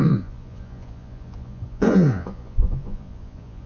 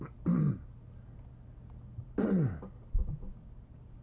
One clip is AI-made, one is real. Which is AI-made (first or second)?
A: first